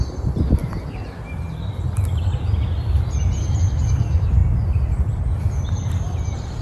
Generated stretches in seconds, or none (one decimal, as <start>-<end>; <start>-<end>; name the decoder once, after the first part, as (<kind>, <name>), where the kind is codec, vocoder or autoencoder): 0.0-0.6 (vocoder, BigVGAN v2); 3.5-4.4; 5.4-6.6

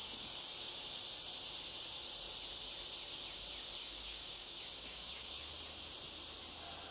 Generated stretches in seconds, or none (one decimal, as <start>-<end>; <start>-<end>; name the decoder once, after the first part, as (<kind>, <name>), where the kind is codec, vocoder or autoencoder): 0.0-0.7 (codec, DAC); 3.8-5.5

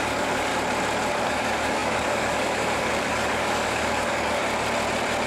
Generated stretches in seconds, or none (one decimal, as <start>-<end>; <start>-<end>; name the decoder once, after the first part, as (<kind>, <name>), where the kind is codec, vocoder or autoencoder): 0.0-0.5 (codec, DAC); 1.2-4.4

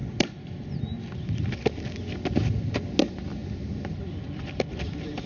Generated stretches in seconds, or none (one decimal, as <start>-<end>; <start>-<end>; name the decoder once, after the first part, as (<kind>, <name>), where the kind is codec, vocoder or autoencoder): 0.0-0.8 (vocoder, BigVGAN v2); 3.4-5.3

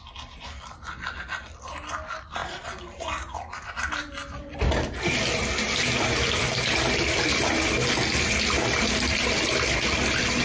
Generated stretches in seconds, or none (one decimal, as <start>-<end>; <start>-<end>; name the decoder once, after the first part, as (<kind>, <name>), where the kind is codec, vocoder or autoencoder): none

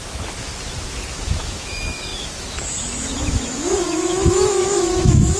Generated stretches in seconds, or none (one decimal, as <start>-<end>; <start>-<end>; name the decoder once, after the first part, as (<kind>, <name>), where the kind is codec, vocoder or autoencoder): 0.0-0.5 (autoencoder, DAC-VAE); 1.1-5.4

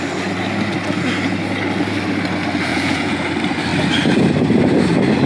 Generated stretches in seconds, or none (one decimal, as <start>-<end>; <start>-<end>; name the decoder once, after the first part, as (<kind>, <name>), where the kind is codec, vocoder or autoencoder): 2.7-3.2 (vocoder, Vocos)